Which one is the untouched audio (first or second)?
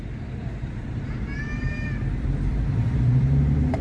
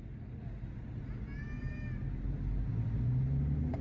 second